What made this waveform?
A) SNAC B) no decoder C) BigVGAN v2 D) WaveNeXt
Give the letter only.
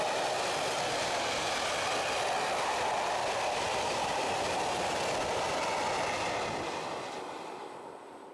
B